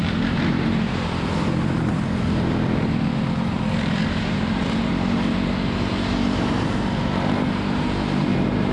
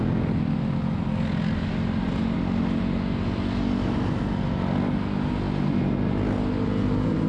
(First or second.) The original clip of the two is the second